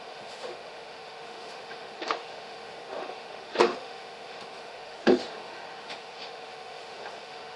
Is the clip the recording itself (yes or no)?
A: no